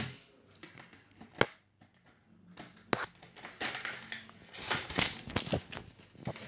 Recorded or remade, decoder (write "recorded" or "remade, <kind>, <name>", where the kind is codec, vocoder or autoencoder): recorded